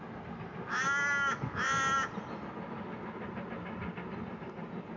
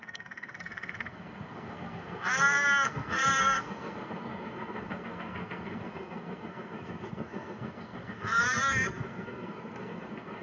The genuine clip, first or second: first